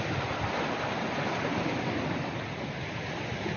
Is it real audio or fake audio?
real